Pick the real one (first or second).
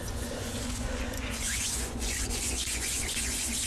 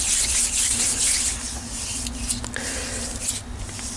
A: second